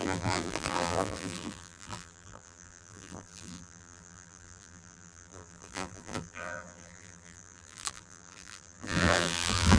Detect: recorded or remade remade